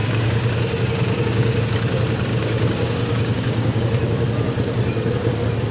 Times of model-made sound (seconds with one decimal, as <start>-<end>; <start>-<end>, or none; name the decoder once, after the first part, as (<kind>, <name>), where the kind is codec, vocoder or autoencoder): 0.0-1.6 (codec, DAC); 2.3-3.8